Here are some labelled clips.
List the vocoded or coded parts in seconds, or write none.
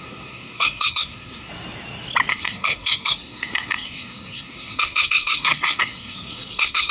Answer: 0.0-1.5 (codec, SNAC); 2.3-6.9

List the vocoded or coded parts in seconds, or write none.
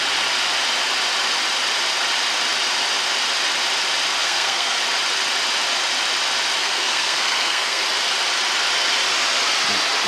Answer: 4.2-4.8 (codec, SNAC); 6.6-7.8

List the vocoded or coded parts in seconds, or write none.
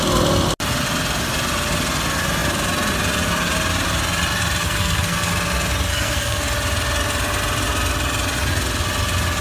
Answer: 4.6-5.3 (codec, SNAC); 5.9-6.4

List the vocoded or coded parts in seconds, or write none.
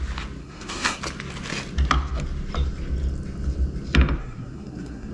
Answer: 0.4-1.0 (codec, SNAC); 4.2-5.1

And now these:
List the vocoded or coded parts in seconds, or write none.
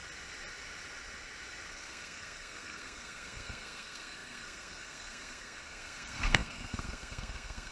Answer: 1.7-7.7 (codec, SNAC)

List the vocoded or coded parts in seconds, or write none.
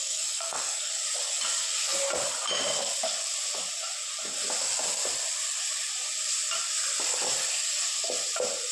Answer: 0.0-0.9 (codec, SNAC)